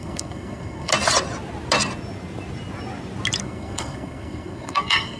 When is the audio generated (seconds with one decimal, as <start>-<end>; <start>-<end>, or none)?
0.0-0.9; 3.4-5.2